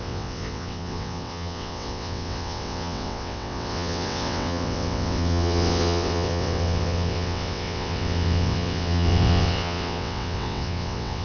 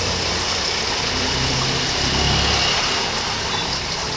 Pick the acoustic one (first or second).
second